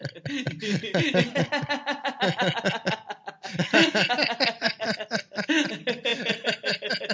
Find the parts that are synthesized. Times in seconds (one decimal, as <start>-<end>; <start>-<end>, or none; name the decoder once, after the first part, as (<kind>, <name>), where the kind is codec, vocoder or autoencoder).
none